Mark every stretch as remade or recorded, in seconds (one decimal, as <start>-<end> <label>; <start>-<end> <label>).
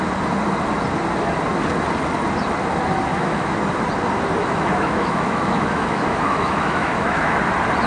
0.0-3.1 recorded; 3.1-3.6 remade; 3.6-4.4 recorded; 4.4-7.4 remade; 7.4-7.9 recorded